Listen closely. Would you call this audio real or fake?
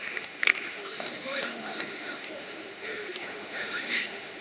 fake